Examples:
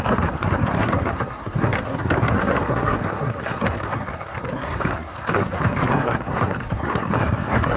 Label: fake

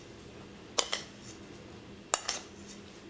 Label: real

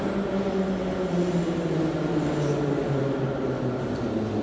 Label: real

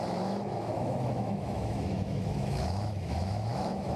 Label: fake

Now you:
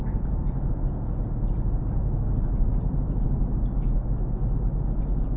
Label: real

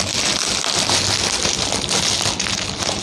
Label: real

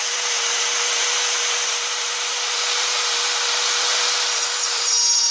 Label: fake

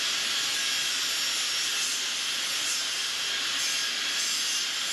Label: real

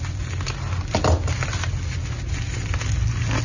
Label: real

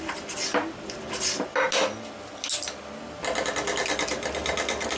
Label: real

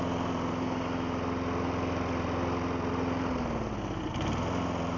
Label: real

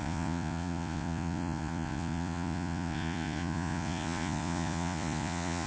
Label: fake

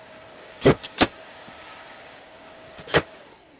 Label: fake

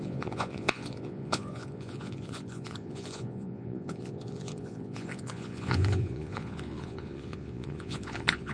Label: fake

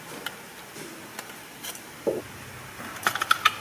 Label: real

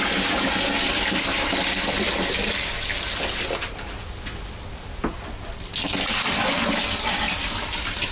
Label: real